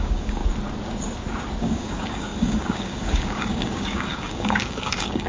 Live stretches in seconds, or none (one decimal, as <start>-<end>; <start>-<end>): 0.4-1.6